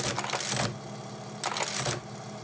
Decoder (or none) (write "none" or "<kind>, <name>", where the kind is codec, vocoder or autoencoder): none